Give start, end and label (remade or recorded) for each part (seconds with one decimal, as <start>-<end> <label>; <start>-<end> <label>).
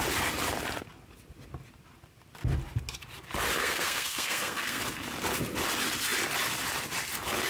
0.0-3.6 recorded; 3.6-4.8 remade; 4.8-7.5 recorded